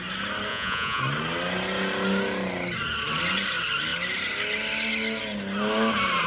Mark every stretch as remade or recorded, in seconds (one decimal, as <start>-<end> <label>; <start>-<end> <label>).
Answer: 0.0-0.5 recorded; 0.5-1.0 remade; 1.0-6.3 recorded